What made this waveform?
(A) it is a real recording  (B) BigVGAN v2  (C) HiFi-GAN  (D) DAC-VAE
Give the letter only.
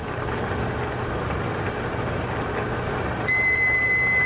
B